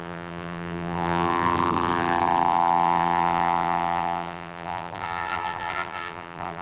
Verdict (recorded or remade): remade